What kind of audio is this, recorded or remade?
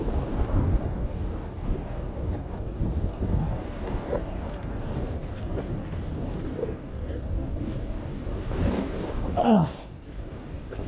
remade